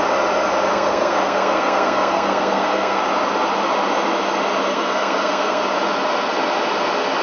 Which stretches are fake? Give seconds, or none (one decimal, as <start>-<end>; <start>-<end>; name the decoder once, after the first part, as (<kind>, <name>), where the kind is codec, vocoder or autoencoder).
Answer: 0.7-3.0 (codec, SNAC); 4.7-5.6